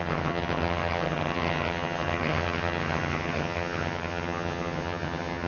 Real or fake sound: fake